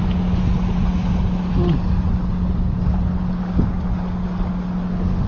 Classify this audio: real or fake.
real